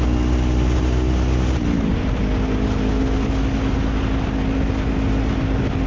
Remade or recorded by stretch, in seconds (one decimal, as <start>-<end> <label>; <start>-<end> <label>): 0.0-2.2 remade; 2.2-5.9 recorded